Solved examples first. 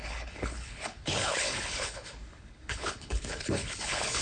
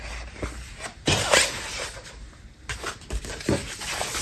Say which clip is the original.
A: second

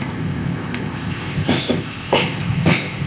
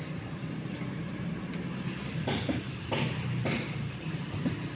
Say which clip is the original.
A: second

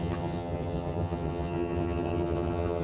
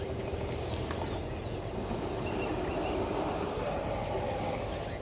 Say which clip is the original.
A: second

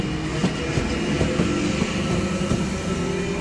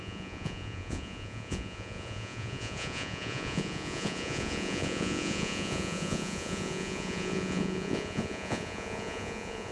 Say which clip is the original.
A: first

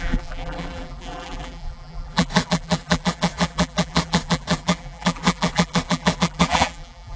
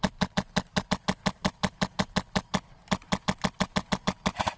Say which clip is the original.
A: second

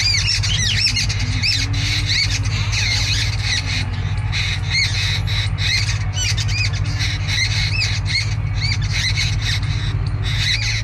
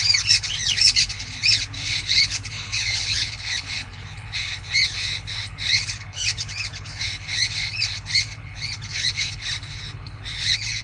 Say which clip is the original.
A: first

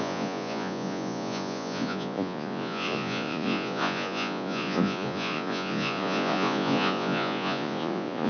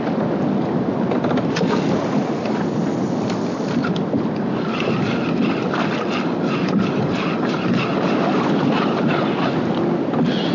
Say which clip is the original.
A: second